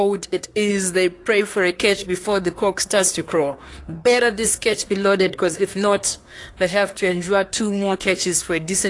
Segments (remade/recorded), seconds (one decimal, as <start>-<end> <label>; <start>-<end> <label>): 0.0-0.7 remade; 0.7-1.4 recorded; 1.4-8.9 remade